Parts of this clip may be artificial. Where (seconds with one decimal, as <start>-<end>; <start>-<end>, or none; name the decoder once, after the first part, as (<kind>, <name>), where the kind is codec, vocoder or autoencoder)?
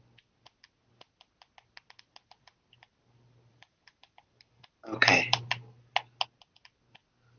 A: 3.5-5.4 (vocoder, BigVGAN v2)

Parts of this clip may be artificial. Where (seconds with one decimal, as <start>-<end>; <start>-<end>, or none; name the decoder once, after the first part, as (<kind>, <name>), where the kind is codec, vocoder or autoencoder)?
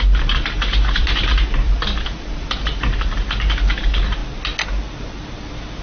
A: 0.0-4.2 (vocoder, BigVGAN v2)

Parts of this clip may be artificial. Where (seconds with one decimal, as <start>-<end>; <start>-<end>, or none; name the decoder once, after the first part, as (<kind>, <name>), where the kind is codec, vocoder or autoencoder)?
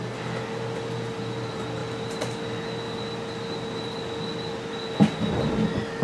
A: 1.8-3.8 (vocoder, BigVGAN v2)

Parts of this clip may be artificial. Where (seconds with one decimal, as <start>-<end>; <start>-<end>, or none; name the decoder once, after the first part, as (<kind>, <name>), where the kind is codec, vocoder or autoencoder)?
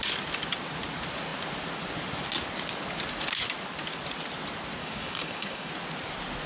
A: 4.8-5.7 (codec, DAC)